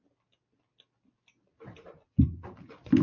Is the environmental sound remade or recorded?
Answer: recorded